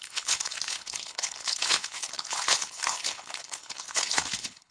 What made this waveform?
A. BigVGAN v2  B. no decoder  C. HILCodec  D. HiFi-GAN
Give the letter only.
C